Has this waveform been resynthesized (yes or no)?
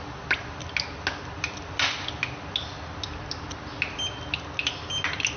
no